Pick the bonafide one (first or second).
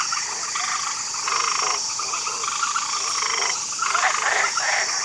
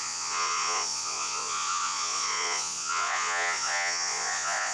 first